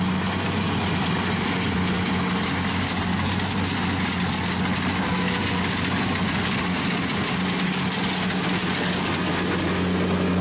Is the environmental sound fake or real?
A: real